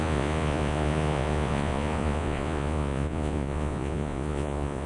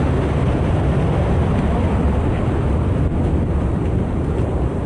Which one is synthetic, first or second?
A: first